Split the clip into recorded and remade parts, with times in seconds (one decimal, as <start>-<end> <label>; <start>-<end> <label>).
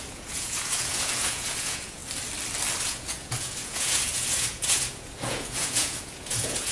0.0-2.0 remade; 2.0-2.8 recorded; 2.8-6.7 remade